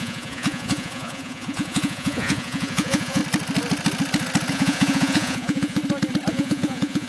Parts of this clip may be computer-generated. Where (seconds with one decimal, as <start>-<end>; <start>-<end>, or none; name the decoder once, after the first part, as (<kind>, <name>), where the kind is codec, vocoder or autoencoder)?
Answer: 0.0-3.2 (vocoder, Vocos); 4.5-5.8; 6.3-7.1